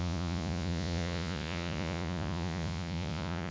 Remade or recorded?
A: remade